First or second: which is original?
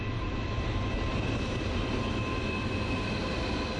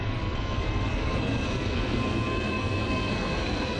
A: first